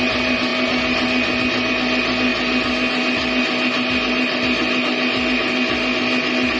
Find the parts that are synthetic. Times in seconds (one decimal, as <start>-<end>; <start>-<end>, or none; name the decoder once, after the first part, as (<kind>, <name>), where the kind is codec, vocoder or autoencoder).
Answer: none

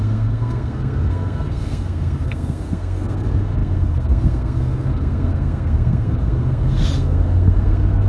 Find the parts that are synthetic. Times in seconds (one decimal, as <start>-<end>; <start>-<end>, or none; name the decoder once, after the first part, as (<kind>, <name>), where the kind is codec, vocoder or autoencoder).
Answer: 0.0-8.1 (codec, SNAC)

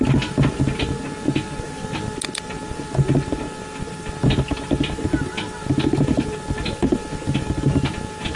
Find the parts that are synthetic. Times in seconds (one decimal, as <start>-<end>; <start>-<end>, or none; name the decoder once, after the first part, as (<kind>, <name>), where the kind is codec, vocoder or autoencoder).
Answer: none